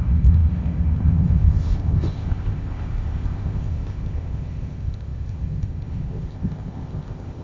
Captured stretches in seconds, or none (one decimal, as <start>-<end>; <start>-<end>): none